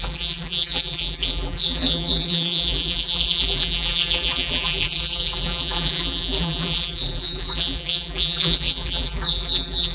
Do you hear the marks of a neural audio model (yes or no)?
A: yes